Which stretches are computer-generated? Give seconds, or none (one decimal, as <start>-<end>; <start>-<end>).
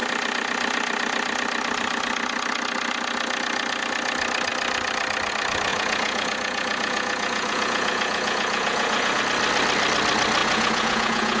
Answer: 5.7-9.2; 10.4-11.4